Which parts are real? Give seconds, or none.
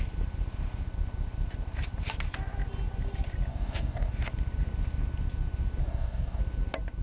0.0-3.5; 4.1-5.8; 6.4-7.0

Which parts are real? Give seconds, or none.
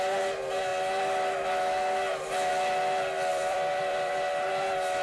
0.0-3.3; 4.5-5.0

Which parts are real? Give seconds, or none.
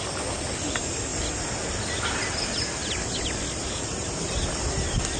0.0-5.2